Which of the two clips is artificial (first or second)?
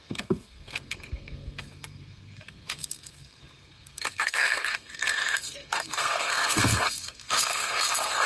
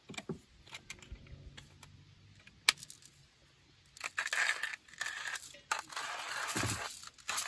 first